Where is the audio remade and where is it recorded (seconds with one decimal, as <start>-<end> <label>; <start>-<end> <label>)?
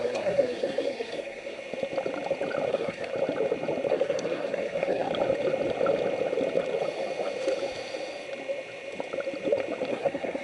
0.0-1.6 remade; 1.6-2.7 recorded; 2.7-3.1 remade; 3.1-3.9 recorded; 3.9-5.1 remade; 5.1-9.9 recorded; 9.9-10.4 remade